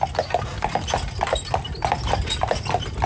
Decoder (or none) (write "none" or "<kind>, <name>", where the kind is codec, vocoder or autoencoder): none